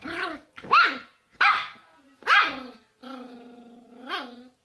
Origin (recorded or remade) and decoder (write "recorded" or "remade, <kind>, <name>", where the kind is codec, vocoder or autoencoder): recorded